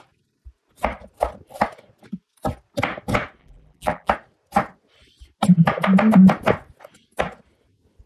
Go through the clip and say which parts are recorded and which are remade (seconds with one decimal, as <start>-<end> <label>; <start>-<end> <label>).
0.0-3.4 recorded; 3.4-4.1 remade; 4.1-8.1 recorded